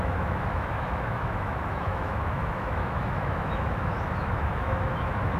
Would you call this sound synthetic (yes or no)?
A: yes